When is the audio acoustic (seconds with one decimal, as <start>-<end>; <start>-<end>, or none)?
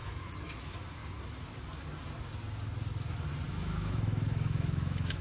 1.0-3.5